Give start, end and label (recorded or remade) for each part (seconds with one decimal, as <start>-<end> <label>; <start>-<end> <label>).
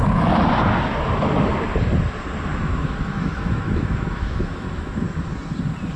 0.0-2.5 recorded; 2.5-5.2 remade; 5.2-6.0 recorded